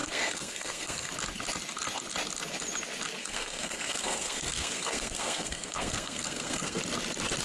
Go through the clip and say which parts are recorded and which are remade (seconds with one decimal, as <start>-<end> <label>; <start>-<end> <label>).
0.0-1.1 remade; 1.1-3.2 recorded; 3.2-6.8 remade; 6.8-7.4 recorded